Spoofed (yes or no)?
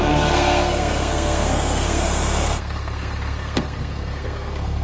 yes